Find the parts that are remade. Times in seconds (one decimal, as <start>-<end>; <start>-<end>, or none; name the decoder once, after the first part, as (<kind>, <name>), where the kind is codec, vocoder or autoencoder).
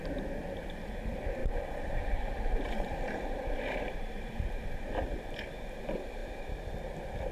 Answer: 1.4-5.8 (vocoder, BigVGAN v2)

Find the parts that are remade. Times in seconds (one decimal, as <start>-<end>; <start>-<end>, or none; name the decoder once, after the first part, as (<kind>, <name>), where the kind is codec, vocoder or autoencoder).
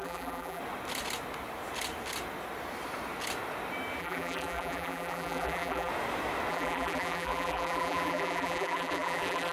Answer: 0.0-0.6 (vocoder, BigVGAN v2); 4.0-5.9; 6.5-9.5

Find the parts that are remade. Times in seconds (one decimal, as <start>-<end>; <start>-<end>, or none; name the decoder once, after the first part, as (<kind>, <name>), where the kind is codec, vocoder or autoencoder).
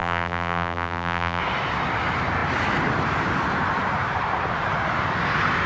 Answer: 0.0-1.4 (vocoder, BigVGAN v2)